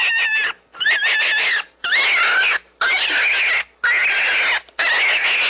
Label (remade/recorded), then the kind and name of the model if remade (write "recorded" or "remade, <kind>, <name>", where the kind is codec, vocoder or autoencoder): recorded